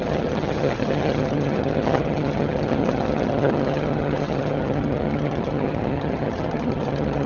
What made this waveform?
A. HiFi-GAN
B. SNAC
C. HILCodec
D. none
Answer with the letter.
A